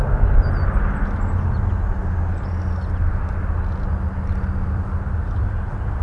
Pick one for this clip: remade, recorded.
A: recorded